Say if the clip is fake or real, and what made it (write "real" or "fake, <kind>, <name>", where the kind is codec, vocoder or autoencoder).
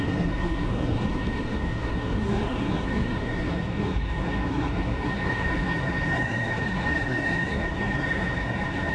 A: fake, codec, SNAC